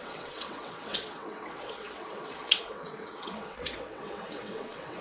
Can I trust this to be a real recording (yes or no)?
no